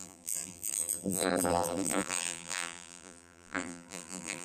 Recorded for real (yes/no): no